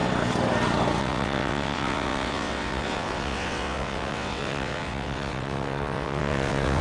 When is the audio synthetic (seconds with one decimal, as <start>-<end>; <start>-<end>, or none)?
1.0-6.8